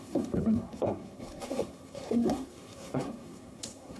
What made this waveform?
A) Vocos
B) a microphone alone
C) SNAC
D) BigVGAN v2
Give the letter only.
C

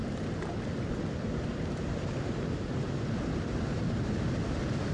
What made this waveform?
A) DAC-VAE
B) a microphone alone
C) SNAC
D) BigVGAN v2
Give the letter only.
B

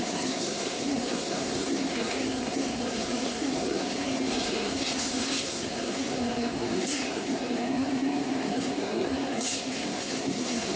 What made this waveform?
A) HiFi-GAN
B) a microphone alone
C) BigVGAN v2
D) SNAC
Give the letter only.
D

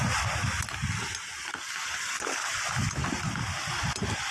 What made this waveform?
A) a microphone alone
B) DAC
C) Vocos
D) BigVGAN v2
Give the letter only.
A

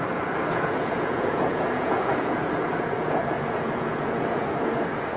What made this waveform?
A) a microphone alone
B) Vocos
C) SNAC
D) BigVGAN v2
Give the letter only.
B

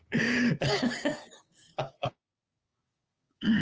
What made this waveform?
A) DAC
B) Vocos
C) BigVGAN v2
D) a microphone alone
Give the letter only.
A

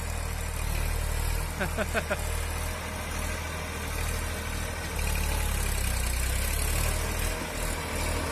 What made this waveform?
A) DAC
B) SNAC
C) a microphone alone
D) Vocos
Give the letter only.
C